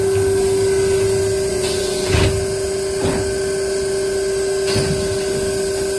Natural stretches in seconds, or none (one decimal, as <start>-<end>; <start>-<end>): 0.0-1.5; 2.2-6.0